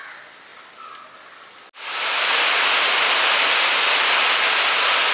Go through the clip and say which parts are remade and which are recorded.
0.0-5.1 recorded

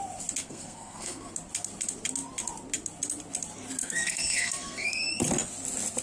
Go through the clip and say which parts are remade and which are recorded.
0.0-0.4 recorded; 0.4-1.3 remade; 1.3-3.8 recorded; 3.8-5.1 remade; 5.1-6.0 recorded

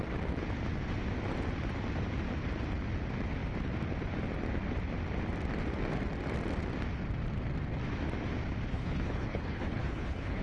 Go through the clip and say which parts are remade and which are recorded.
0.0-8.7 recorded; 8.7-10.4 remade

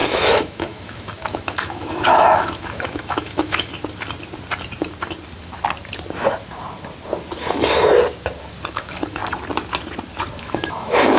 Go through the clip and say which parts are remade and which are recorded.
0.0-3.7 remade; 3.7-8.7 recorded; 8.7-9.2 remade; 9.2-10.4 recorded; 10.4-11.2 remade

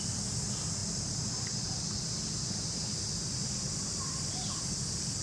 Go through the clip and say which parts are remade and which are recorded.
0.0-5.2 recorded

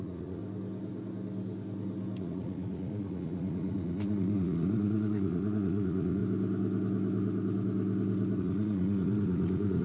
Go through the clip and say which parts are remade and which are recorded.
0.0-0.4 remade; 0.4-2.2 recorded; 2.2-6.2 remade; 6.2-8.4 recorded; 8.4-9.8 remade